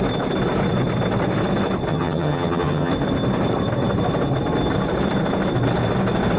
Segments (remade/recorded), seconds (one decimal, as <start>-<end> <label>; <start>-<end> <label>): 0.0-1.9 recorded; 1.9-2.9 remade; 2.9-6.4 recorded